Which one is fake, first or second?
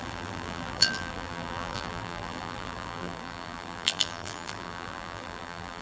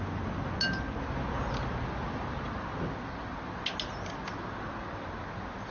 first